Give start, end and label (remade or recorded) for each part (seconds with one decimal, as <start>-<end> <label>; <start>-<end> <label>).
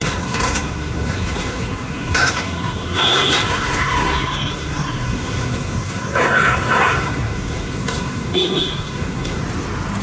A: 0.0-9.4 remade; 9.4-10.0 recorded